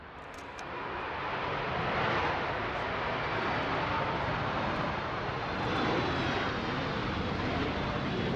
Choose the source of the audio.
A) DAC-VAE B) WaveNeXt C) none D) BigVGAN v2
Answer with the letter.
C